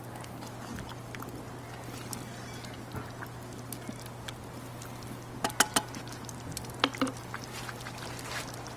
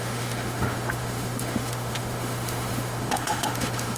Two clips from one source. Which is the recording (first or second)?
first